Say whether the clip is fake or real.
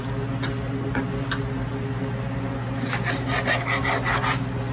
real